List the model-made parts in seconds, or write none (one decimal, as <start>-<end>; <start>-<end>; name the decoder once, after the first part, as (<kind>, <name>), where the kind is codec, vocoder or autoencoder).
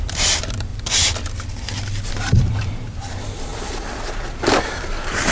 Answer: 0.0-0.7 (vocoder, BigVGAN v2); 2.1-3.5; 4.6-5.3